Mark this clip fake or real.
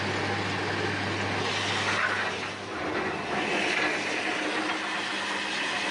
real